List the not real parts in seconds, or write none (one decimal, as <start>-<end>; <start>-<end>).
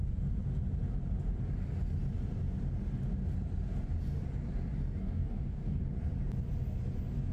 5.0-5.8